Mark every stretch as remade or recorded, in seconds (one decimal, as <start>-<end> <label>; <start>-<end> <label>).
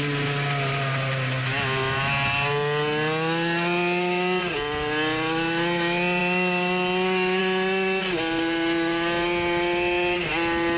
0.0-10.8 recorded